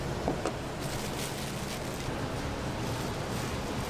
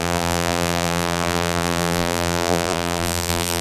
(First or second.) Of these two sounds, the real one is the first